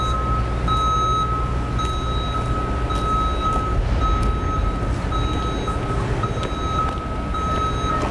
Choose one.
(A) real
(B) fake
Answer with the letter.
A